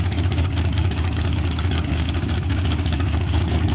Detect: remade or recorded remade